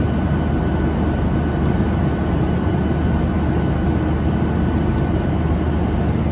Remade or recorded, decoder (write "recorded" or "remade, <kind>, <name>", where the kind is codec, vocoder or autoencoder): recorded